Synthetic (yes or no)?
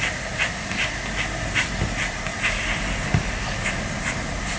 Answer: no